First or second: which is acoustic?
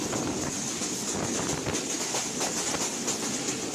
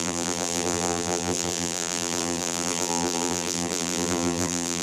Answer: first